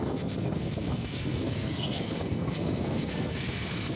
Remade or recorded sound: remade